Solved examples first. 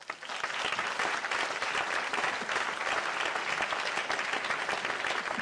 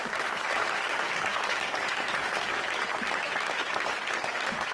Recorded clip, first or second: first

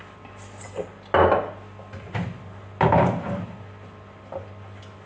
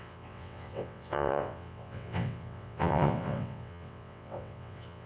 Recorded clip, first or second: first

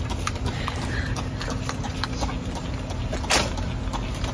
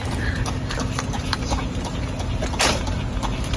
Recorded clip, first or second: first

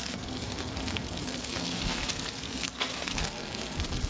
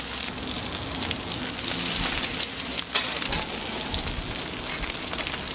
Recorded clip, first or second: second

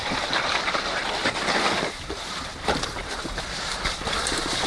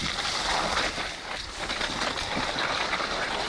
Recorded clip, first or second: second